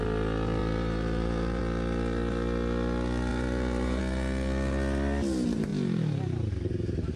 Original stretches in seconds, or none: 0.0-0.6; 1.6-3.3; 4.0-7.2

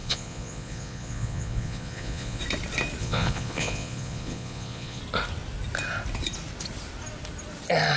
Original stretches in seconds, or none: 2.4-3.0; 5.0-8.0

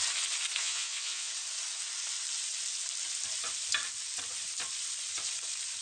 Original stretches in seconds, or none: 0.0-0.6; 1.3-5.8